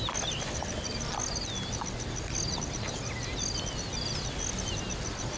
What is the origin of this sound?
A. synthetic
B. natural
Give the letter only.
B